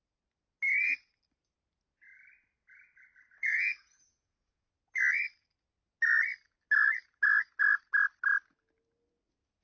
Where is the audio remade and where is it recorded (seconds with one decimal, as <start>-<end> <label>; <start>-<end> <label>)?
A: 0.0-3.4 recorded; 3.4-4.7 remade; 4.7-9.6 recorded